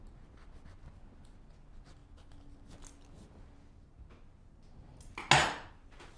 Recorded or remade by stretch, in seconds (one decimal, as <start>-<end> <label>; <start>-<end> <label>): 0.0-6.2 recorded